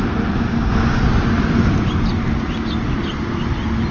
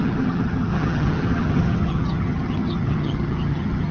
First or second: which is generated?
second